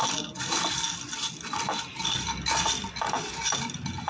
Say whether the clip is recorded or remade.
recorded